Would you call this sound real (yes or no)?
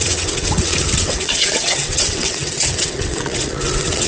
no